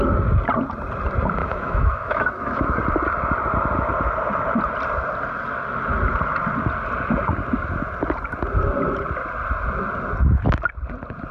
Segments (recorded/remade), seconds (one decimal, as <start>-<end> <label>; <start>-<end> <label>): 0.0-1.4 recorded; 1.4-2.8 remade; 2.8-11.3 recorded